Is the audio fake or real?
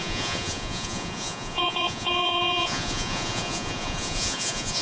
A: fake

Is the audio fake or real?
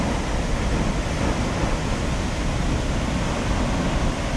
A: real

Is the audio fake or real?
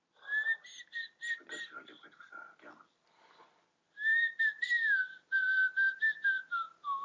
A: real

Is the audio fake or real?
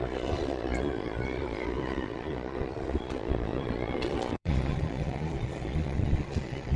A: fake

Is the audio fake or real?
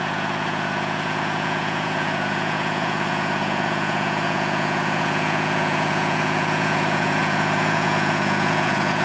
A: fake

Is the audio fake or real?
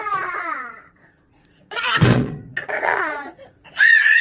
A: fake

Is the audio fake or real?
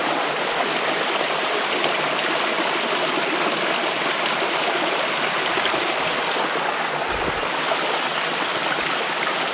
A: real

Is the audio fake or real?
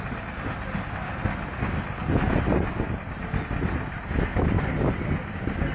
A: real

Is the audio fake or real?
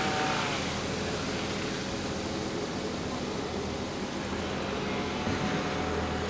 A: real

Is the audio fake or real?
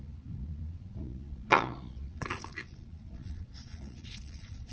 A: fake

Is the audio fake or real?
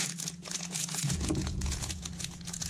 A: fake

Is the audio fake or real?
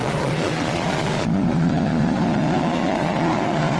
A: fake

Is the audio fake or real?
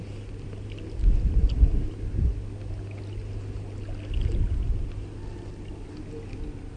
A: real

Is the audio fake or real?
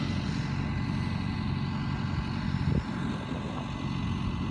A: real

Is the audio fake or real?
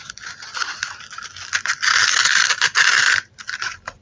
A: real